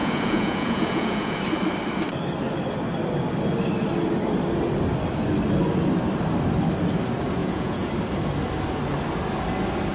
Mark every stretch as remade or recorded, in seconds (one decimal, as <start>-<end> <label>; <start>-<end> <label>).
0.0-1.4 remade; 1.4-7.4 recorded; 7.4-7.9 remade; 7.9-9.9 recorded